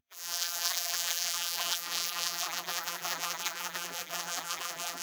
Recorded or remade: remade